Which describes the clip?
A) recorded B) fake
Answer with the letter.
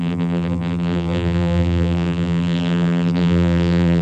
B